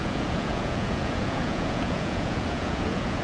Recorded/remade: remade